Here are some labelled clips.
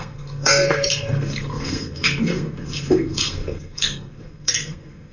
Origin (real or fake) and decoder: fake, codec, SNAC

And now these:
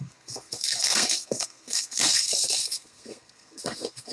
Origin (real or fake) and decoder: fake, codec, SNAC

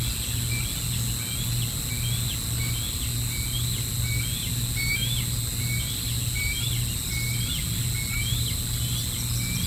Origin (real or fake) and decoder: real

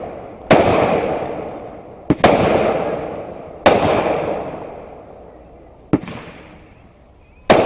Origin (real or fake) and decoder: real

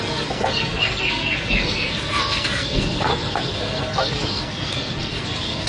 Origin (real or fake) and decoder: fake, codec, SNAC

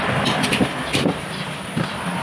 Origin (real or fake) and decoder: real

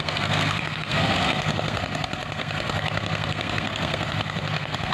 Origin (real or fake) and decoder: fake, codec, SNAC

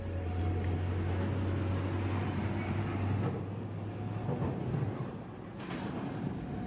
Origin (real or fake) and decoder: real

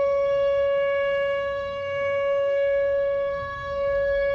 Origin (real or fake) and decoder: fake, codec, SNAC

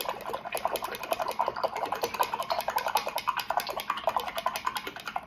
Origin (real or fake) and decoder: real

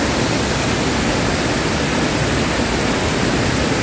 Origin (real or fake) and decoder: real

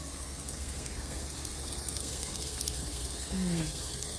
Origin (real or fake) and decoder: fake, codec, SNAC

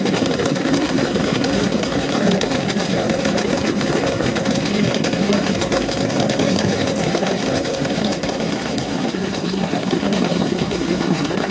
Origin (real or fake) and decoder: fake, codec, SNAC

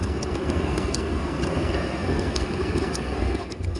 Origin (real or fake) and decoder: fake, codec, SNAC